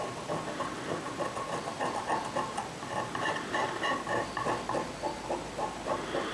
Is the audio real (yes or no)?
yes